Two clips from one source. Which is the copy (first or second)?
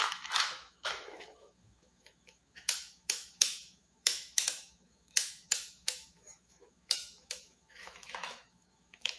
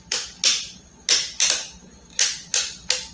first